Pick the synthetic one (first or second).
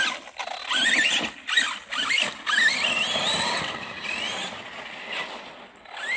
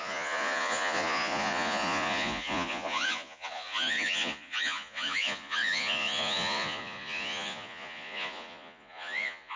second